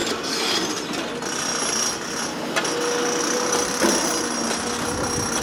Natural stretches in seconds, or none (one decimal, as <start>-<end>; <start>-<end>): 0.0-5.4